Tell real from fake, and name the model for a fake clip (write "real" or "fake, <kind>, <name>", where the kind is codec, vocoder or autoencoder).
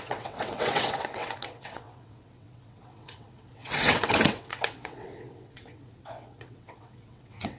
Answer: fake, vocoder, WaveNeXt